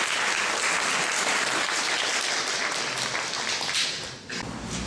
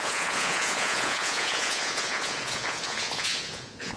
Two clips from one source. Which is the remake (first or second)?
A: second